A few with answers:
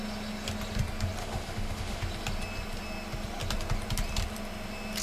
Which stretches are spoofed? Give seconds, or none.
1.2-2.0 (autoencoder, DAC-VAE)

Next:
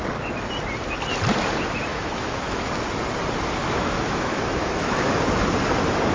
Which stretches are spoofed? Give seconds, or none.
1.9-2.6 (autoencoder, DAC-VAE); 3.6-5.1